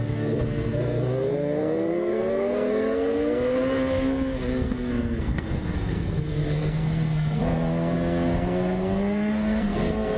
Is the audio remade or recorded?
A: remade